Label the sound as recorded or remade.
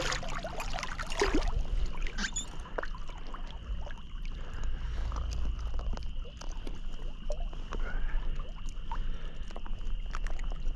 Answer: recorded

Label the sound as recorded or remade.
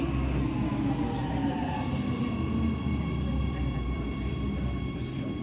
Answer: recorded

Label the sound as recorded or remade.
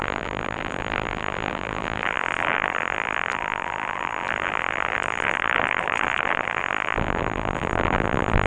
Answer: remade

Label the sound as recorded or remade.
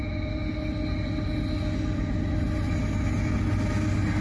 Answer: recorded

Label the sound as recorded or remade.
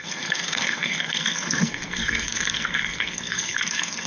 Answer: remade